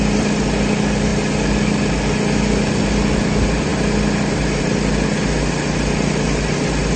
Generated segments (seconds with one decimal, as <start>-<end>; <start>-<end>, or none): none